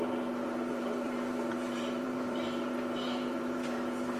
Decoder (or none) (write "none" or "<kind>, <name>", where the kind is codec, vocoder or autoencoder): vocoder, BigVGAN v2